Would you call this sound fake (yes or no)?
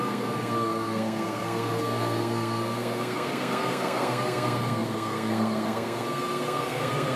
yes